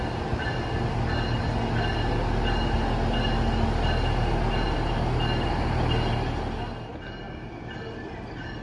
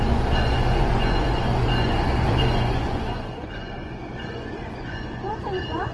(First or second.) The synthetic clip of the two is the second